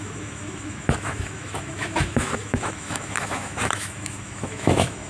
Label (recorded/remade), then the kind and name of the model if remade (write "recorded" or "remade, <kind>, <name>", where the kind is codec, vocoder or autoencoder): remade, autoencoder, DAC-VAE